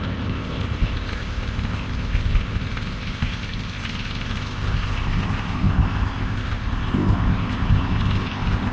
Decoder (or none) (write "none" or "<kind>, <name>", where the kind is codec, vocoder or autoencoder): codec, ZipCodec